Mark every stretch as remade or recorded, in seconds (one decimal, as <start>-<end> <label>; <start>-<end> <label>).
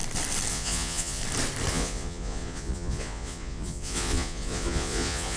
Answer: 0.0-0.5 recorded; 0.5-1.2 remade; 1.2-1.7 recorded; 1.7-5.4 remade